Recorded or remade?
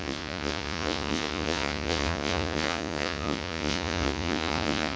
remade